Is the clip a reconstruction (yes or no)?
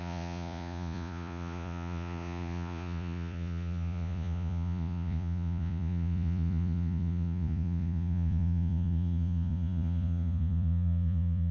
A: yes